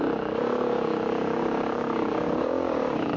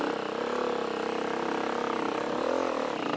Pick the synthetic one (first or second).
first